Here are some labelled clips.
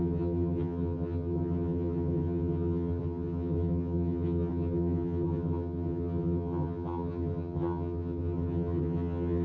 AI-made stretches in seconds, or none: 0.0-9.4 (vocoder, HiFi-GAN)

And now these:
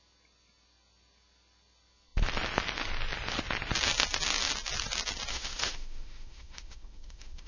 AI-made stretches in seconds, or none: 5.3-7.5 (autoencoder, DAC-VAE)

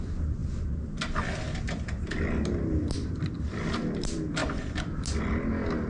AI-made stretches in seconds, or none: none

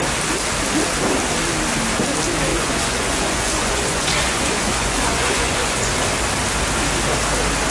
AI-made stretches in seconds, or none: 2.5-5.9 (vocoder, Vocos)

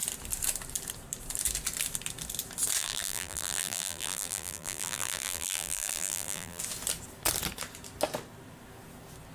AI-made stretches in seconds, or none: 2.8-6.6 (vocoder, BigVGAN v2)

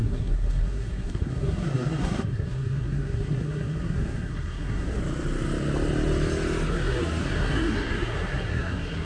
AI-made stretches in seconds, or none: 0.0-5.0 (codec, SNAC); 6.7-9.0

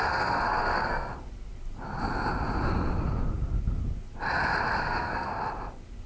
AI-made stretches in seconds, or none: 0.0-1.1 (codec, SNAC); 4.8-5.3

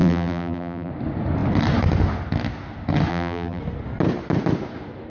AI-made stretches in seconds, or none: 0.0-0.9 (vocoder, BigVGAN v2); 3.1-3.6